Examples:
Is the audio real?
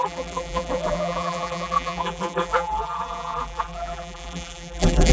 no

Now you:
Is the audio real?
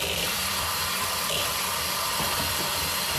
no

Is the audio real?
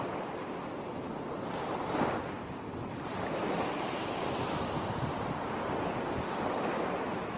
yes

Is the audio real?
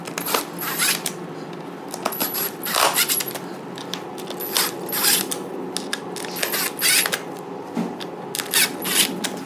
yes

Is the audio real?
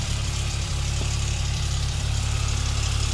no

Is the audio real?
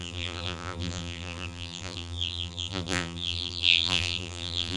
no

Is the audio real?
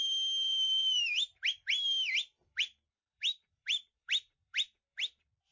no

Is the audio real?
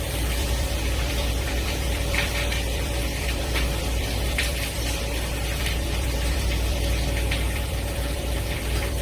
no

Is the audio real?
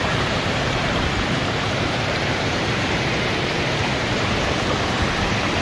no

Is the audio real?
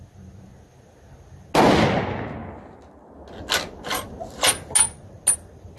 yes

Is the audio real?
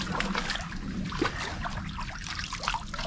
no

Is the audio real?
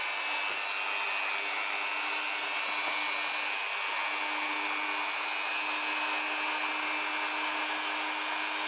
yes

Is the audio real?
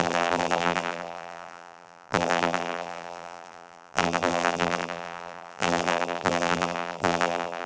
no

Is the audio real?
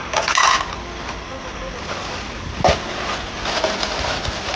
yes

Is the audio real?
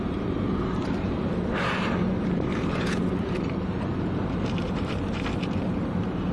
no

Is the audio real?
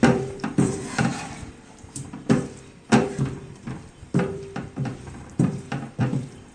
no